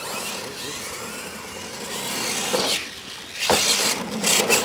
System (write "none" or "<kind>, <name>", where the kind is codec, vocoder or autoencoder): none